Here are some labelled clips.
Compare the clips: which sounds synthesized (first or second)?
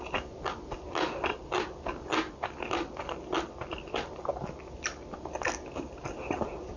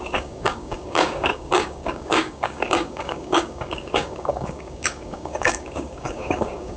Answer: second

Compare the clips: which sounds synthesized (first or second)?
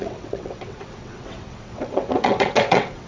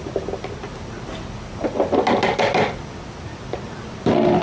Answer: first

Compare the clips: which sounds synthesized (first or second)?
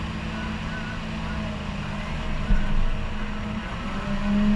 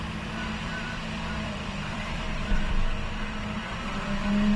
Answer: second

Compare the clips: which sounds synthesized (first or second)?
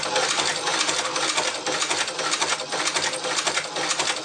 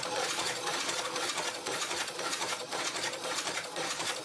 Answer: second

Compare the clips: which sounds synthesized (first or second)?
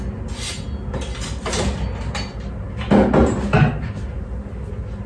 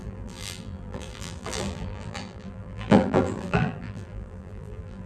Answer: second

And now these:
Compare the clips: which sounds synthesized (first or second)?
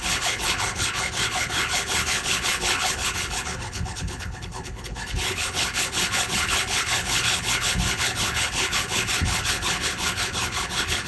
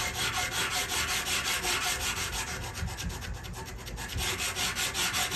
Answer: first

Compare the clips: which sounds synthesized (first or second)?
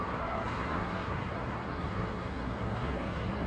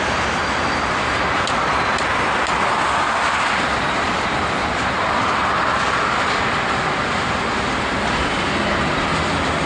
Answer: first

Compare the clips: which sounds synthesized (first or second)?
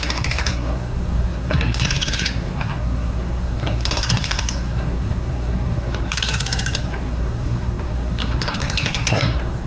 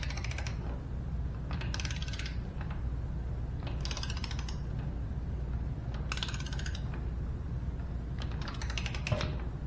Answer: first